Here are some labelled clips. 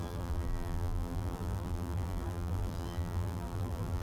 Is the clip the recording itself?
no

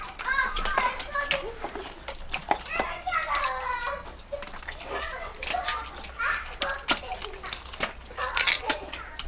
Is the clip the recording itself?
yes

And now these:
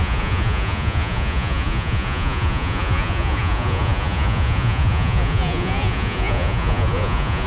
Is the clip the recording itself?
no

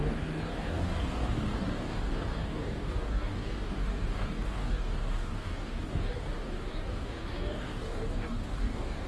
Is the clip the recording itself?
no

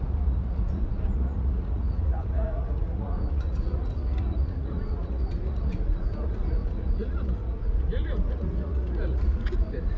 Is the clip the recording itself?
no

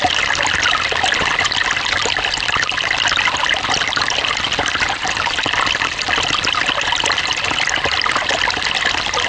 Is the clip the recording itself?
yes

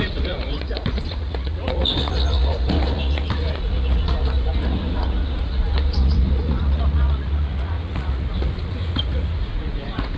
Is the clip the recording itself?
no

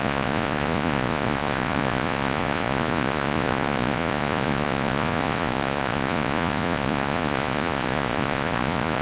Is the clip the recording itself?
no